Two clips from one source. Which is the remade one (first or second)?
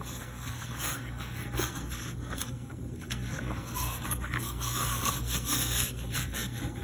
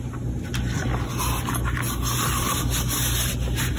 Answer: first